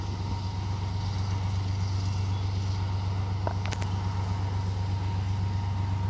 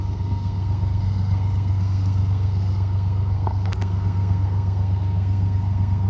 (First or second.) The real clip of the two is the first